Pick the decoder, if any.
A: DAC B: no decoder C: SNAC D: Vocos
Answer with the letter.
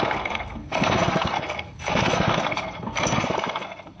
C